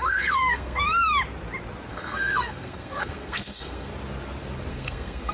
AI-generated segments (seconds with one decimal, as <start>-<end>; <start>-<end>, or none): 0.0-1.2; 1.9-3.9; 4.7-5.3